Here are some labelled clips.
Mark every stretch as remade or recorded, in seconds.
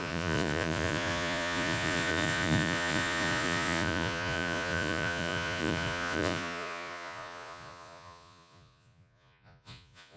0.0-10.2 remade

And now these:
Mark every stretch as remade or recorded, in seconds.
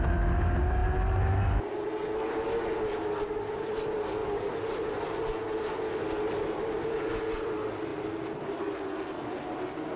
0.0-10.0 recorded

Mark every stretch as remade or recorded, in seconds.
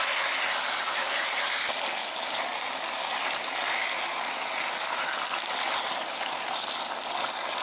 0.0-7.6 recorded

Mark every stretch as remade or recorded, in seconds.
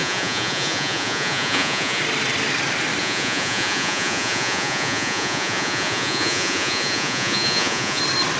0.0-2.0 remade; 2.0-3.0 recorded; 3.0-8.0 remade; 8.0-8.4 recorded